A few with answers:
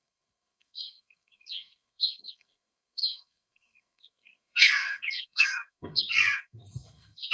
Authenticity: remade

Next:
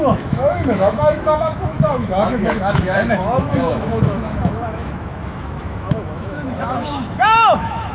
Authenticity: remade